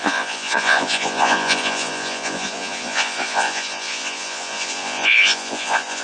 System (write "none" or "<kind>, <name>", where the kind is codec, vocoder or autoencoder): vocoder, Vocos